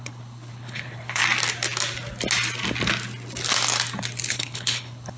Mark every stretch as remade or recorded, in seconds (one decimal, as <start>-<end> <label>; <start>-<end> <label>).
0.0-1.2 remade; 1.2-4.3 recorded; 4.3-5.2 remade